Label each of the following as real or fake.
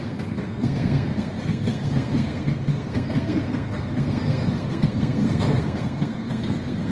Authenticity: fake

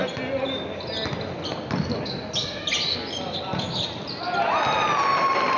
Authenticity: real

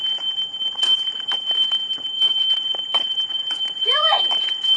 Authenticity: fake